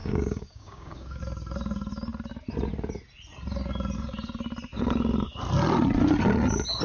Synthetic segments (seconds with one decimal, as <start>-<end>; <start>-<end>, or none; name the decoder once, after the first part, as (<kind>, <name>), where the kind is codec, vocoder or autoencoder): 0.0-1.2 (codec, DAC)